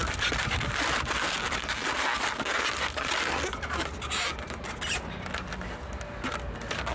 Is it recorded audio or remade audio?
recorded